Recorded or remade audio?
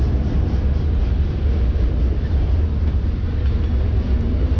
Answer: recorded